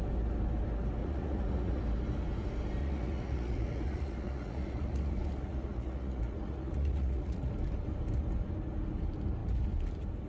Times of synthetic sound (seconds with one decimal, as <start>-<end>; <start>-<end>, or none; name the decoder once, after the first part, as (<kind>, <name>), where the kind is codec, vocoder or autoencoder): 1.0-1.8 (vocoder, Vocos); 2.8-7.5